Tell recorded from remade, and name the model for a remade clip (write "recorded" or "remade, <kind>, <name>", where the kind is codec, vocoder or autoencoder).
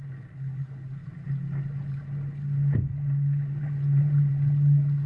recorded